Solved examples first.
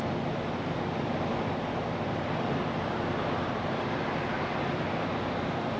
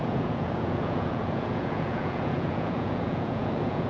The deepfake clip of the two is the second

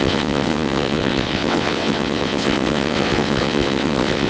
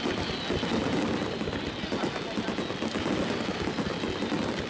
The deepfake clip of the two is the first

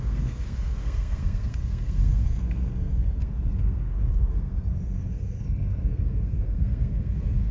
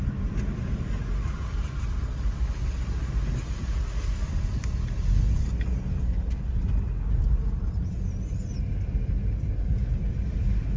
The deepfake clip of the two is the first